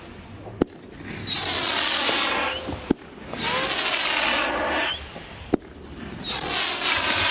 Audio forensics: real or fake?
real